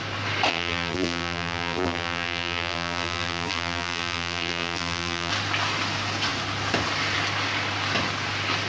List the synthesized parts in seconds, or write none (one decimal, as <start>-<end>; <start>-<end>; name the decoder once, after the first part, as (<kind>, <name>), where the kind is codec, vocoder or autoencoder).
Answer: 0.5-5.3 (vocoder, BigVGAN v2)